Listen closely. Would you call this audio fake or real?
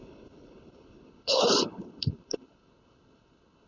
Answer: fake